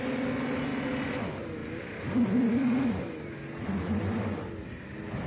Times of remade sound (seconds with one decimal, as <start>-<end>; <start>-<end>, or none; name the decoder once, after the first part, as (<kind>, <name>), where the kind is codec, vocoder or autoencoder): none

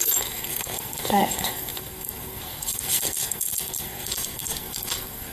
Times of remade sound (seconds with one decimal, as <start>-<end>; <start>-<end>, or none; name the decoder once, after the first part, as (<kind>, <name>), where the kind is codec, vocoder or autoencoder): 0.0-5.3 (codec, SNAC)

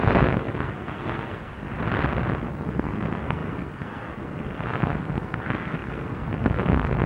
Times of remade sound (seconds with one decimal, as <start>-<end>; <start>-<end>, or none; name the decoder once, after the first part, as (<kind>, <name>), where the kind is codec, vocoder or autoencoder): 0.0-1.7 (codec, SNAC); 2.5-7.1

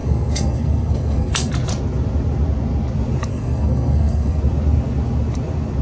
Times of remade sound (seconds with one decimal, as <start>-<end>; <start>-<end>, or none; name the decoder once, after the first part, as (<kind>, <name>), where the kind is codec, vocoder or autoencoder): 0.0-1.5 (codec, SNAC); 3.3-4.4

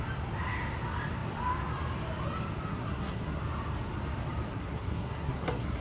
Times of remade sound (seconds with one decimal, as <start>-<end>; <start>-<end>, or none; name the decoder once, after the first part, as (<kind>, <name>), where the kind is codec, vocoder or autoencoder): 2.7-3.4 (codec, SNAC); 4.5-5.8

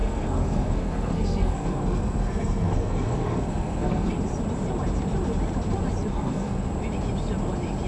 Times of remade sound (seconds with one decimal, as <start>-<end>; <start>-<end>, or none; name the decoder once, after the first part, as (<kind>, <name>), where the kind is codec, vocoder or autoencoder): 0.0-4.1 (codec, SNAC); 6.1-6.7

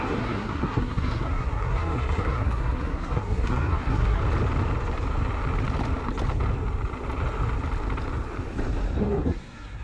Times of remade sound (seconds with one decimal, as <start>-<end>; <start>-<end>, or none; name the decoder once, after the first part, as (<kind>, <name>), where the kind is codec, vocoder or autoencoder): 0.0-4.2 (codec, SNAC); 9.0-9.8

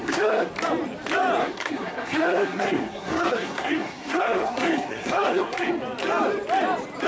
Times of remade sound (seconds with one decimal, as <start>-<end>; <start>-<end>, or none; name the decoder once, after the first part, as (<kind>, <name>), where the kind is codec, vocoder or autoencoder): 0.0-0.5 (codec, SNAC); 1.4-5.7